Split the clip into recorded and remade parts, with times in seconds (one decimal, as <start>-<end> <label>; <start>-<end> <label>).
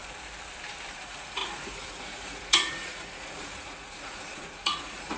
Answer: 0.0-0.9 recorded; 0.9-5.2 remade